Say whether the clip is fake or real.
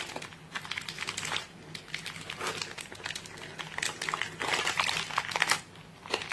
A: real